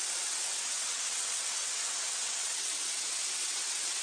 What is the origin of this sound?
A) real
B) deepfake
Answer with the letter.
B